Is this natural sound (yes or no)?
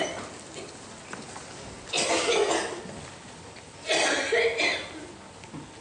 yes